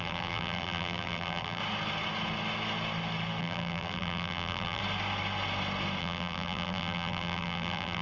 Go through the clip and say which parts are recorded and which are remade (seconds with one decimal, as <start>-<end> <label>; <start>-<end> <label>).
0.0-1.6 remade; 1.6-3.4 recorded; 3.4-4.8 remade; 4.8-6.0 recorded; 6.0-8.0 remade